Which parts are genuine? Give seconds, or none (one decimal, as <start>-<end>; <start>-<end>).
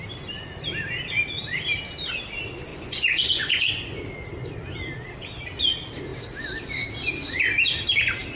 0.0-2.7; 4.0-8.4